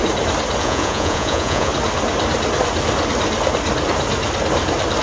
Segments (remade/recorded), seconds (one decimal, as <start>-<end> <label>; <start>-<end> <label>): 0.0-0.6 recorded; 0.6-1.7 remade; 1.7-5.0 recorded